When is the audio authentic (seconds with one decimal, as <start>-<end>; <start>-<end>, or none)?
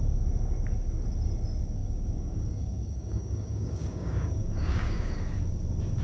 0.0-1.8; 5.1-6.0